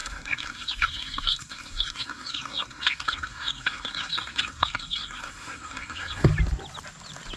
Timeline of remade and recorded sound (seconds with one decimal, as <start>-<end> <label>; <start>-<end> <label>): 0.0-6.3 remade; 6.3-7.4 recorded